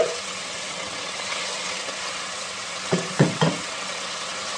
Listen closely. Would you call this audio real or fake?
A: fake